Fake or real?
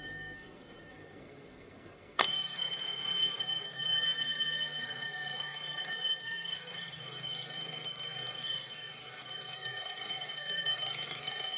fake